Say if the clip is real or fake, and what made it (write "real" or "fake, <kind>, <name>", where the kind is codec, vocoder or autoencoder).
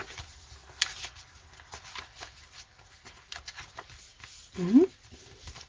real